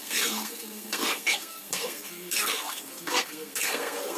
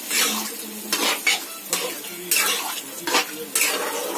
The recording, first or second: second